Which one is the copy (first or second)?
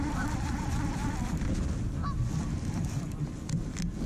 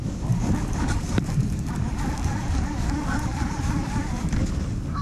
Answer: second